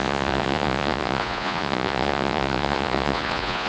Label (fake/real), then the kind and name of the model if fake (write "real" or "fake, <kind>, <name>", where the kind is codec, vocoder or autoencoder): fake, vocoder, Vocos